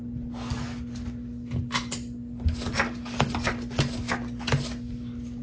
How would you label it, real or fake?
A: real